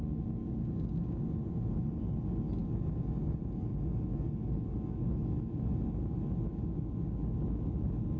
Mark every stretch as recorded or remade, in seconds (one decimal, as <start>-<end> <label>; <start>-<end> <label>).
0.0-0.4 recorded; 0.4-1.3 remade; 1.3-8.2 recorded